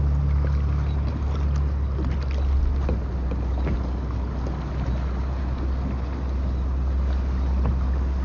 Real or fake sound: real